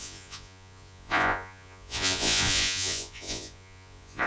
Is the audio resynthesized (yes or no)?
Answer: yes